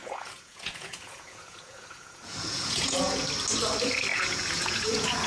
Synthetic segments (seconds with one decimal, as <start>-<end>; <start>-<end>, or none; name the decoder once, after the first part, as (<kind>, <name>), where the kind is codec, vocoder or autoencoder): 0.0-3.2 (vocoder, Vocos); 4.1-5.3